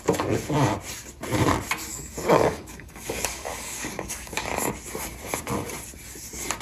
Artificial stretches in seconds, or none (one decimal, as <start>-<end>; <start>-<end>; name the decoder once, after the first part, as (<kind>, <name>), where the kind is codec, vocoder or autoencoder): 1.9-4.7 (codec, DAC)